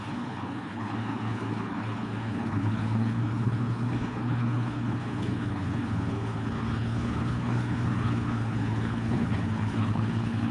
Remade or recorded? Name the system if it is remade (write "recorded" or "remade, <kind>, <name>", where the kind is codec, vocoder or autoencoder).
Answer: remade, codec, HILCodec